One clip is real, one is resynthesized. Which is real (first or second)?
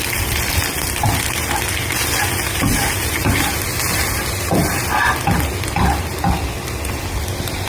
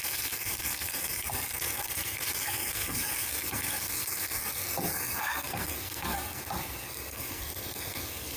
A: first